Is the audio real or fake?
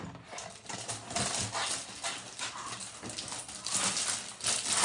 real